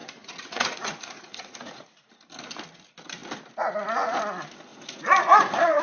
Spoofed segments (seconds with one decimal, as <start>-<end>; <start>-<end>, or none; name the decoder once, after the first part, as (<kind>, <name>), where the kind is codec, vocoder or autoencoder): 0.0-2.1 (vocoder, Vocos); 4.7-5.8